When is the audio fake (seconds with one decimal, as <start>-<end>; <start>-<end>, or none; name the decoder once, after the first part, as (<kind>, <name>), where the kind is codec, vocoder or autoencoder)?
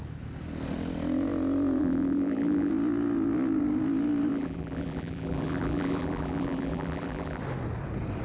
1.8-2.7 (vocoder, BigVGAN v2); 4.3-7.4